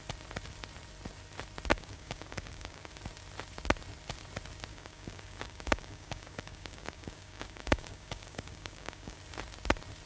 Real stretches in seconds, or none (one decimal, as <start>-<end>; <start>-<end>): 0.0-1.7; 2.9-4.7; 9.2-10.1